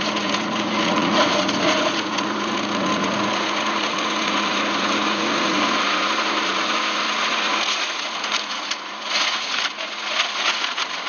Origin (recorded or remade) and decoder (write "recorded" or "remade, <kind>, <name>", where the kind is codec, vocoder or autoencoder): remade, vocoder, Vocos